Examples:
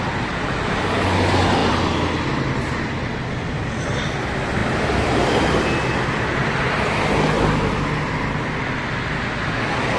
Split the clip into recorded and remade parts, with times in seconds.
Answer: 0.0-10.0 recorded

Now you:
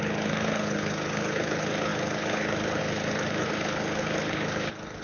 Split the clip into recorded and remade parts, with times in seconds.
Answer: 0.0-5.0 remade

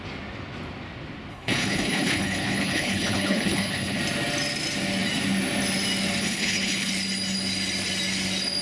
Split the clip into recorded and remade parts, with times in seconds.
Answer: 0.0-1.3 recorded; 1.3-4.0 remade; 4.0-6.2 recorded; 6.2-6.9 remade; 6.9-8.6 recorded

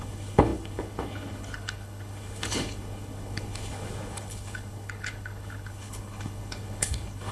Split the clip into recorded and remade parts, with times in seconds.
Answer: 0.0-7.3 remade

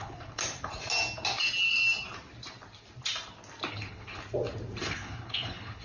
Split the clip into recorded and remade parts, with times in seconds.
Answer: 0.0-0.4 remade; 0.4-3.7 recorded; 3.7-4.2 remade; 4.2-4.8 recorded; 4.8-5.8 remade

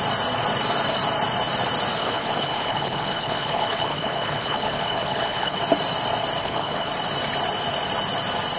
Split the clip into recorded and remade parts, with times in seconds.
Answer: 0.0-2.0 recorded; 2.0-5.6 remade; 5.6-6.4 recorded; 6.4-6.9 remade; 6.9-8.6 recorded